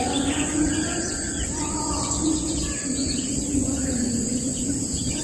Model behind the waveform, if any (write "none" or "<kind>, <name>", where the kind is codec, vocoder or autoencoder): vocoder, Vocos